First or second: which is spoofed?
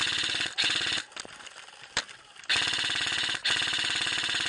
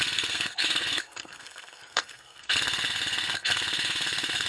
second